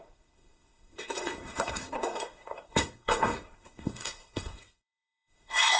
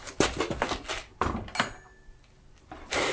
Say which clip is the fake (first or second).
first